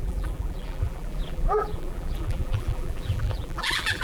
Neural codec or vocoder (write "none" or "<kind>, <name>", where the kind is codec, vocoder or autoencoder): vocoder, BigVGAN v2